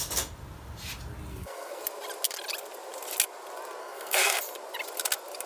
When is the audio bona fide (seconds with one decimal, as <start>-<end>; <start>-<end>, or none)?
0.0-1.3; 1.8-3.8; 4.4-5.5